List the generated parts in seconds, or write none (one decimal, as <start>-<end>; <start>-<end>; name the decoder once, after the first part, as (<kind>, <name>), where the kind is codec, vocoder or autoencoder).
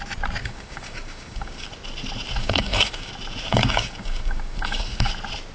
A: 0.4-1.7 (codec, DAC); 2.4-3.1; 3.5-5.1